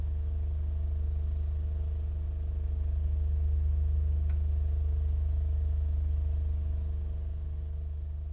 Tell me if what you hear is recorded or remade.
recorded